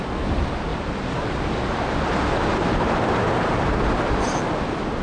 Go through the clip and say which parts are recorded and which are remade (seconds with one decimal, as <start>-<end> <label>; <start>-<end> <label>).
0.0-0.7 recorded; 0.7-3.7 remade; 3.7-5.0 recorded